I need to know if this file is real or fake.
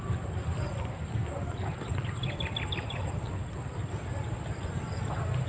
real